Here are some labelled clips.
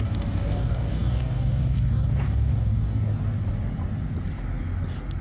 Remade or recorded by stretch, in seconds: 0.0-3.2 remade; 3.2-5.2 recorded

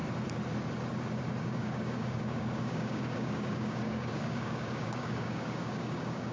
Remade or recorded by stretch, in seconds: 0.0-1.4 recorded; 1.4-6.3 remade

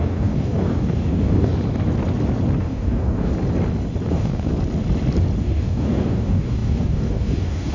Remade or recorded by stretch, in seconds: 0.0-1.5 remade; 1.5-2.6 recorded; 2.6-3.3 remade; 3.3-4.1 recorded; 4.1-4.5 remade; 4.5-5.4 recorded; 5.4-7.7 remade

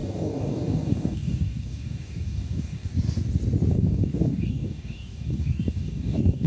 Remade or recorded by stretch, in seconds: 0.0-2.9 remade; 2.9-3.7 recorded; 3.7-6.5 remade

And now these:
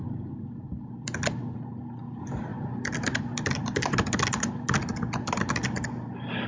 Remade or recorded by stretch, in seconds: 0.0-6.5 recorded

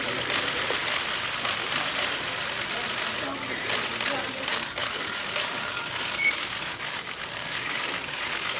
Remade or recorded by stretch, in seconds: 0.0-4.5 recorded; 4.5-8.6 remade

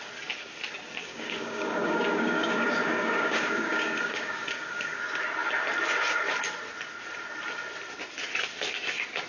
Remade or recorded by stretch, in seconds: 0.0-1.0 recorded; 1.0-5.0 remade; 5.0-9.3 recorded

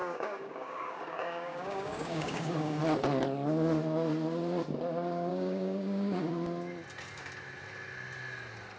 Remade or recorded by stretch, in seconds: 0.0-2.8 remade; 2.8-5.3 recorded; 5.3-6.3 remade; 6.3-8.8 recorded